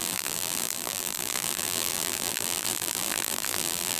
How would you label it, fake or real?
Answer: fake